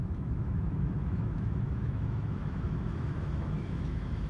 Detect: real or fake fake